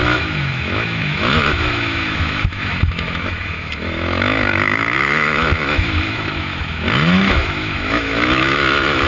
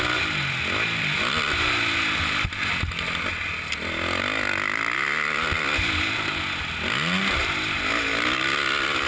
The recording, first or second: second